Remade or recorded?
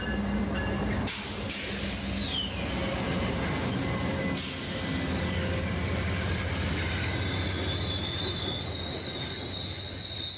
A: recorded